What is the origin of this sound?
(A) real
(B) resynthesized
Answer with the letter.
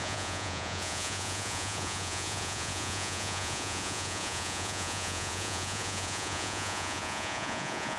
B